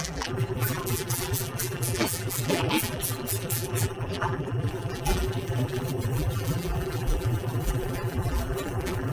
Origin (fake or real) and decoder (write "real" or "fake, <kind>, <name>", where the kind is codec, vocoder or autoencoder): fake, vocoder, BigVGAN v2